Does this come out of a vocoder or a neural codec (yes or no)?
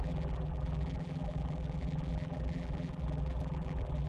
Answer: yes